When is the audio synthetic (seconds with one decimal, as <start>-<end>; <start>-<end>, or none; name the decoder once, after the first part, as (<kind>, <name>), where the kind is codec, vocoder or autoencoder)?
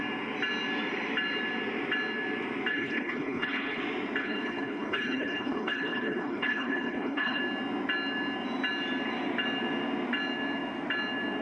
2.7-3.8 (codec, HILCodec); 4.2-7.4